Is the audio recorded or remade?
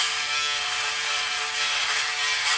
recorded